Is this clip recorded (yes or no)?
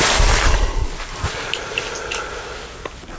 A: yes